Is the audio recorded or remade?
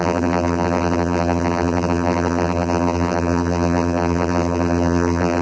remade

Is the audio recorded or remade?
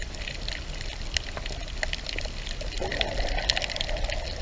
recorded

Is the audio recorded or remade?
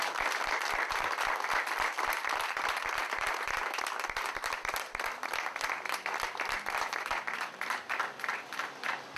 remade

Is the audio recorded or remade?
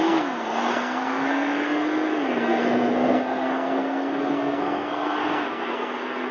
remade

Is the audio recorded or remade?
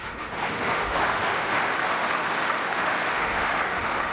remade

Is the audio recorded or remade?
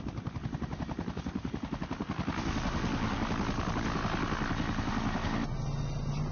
recorded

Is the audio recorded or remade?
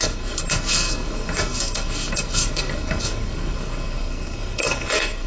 remade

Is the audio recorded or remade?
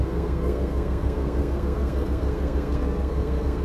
remade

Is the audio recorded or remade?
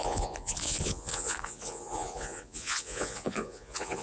remade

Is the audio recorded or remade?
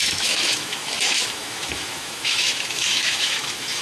remade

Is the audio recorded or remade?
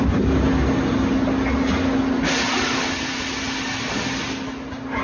recorded